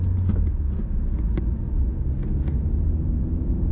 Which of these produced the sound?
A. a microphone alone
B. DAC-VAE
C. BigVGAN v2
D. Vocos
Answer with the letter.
A